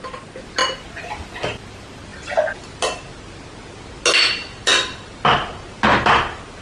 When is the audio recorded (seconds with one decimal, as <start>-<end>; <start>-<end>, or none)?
0.0-6.6